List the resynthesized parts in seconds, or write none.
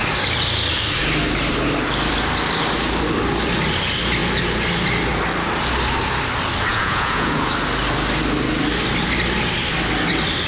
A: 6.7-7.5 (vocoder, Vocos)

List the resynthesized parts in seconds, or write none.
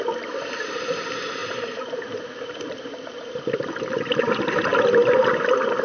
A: 1.4-3.9 (vocoder, BigVGAN v2)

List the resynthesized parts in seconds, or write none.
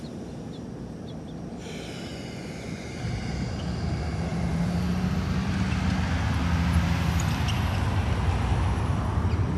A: 2.1-3.0 (vocoder, Vocos)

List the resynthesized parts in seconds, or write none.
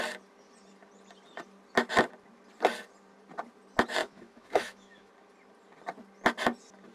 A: 4.0-5.1 (autoencoder, DAC-VAE)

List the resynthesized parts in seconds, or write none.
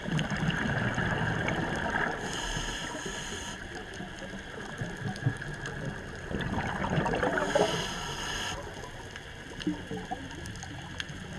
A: none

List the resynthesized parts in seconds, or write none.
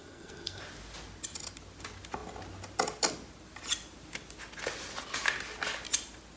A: 0.0-0.6 (codec, SNAC)